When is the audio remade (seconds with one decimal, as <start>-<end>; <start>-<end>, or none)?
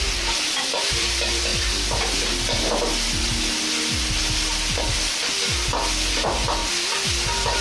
0.0-1.5; 6.1-6.6